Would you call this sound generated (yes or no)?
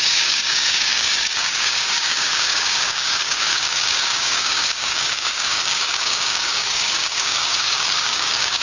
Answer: yes